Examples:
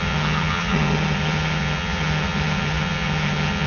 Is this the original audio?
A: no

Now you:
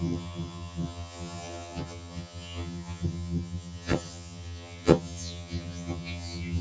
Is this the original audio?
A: no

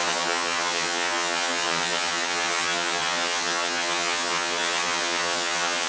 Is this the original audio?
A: no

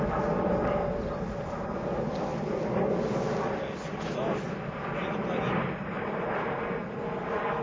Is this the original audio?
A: yes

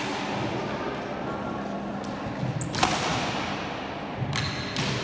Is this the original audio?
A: yes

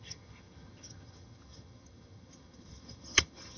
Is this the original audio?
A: no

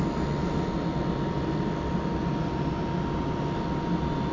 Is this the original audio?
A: yes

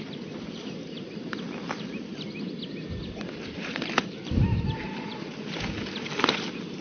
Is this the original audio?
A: yes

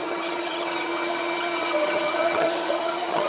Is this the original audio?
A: no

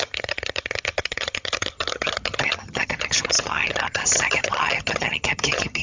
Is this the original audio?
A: no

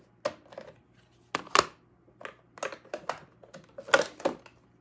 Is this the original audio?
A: yes